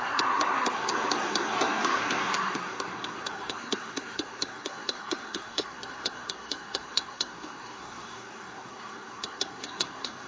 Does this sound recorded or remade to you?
remade